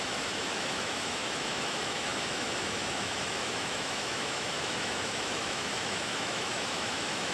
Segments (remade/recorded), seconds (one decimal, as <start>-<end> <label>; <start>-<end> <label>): 0.0-7.3 remade